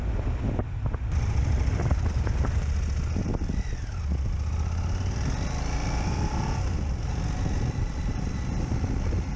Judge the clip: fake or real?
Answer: real